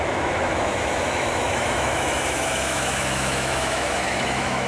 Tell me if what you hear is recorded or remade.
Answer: remade